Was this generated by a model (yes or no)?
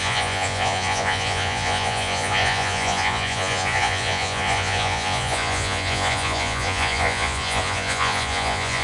yes